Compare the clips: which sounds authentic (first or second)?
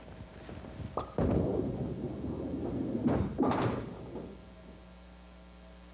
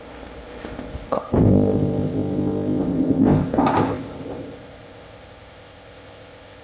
first